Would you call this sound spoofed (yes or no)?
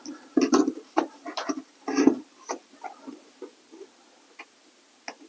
no